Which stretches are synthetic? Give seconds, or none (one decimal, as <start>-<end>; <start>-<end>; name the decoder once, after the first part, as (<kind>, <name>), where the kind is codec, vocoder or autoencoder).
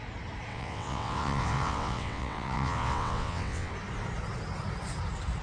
0.5-3.7 (vocoder, WaveNeXt)